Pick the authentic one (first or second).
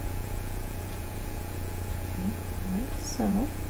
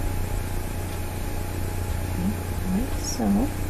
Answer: second